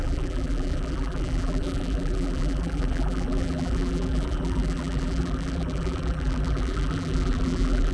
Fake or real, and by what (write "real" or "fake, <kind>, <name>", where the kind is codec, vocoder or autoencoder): fake, vocoder, BigVGAN v2